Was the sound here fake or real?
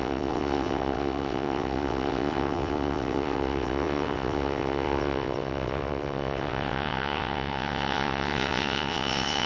fake